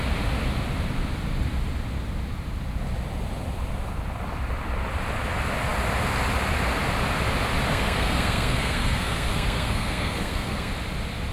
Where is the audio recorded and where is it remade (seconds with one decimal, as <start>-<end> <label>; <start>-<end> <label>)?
0.0-7.7 recorded; 7.7-10.7 remade; 10.7-11.3 recorded